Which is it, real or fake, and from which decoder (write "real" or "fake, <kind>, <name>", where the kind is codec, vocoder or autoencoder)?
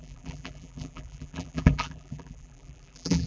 fake, vocoder, BigVGAN v2